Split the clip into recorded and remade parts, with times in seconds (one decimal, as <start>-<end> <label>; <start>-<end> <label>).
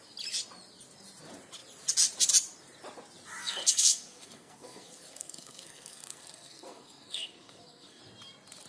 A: 0.0-3.4 recorded; 3.4-8.0 remade; 8.0-8.7 recorded